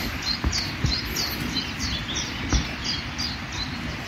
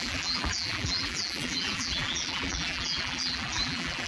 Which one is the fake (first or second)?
second